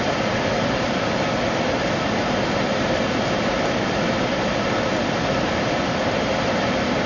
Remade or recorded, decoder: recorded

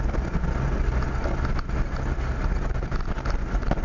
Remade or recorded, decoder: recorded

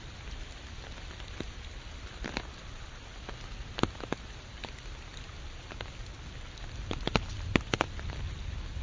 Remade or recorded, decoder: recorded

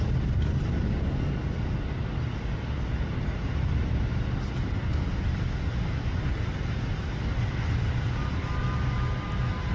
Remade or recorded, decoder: recorded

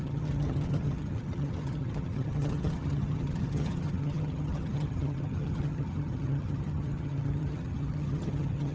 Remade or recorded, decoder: remade, vocoder, HiFi-GAN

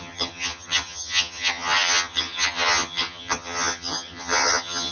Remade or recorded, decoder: remade, vocoder, HiFi-GAN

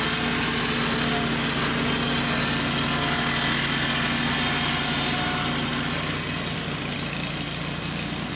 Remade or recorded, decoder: recorded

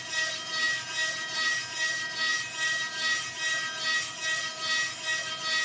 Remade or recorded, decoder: recorded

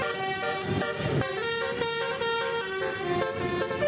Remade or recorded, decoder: recorded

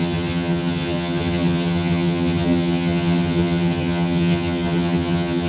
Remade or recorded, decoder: remade, vocoder, HiFi-GAN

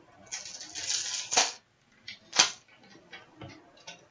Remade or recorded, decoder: recorded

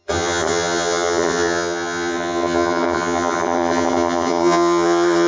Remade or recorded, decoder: remade, vocoder, HiFi-GAN